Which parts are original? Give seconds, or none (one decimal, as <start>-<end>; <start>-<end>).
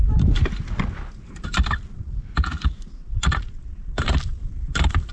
0.0-3.1